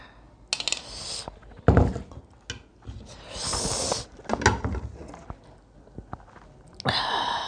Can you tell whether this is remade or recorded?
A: recorded